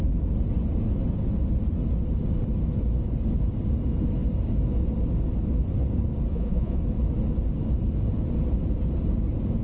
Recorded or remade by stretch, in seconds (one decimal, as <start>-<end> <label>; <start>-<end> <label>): 0.0-6.3 recorded; 6.3-6.8 remade; 6.8-9.6 recorded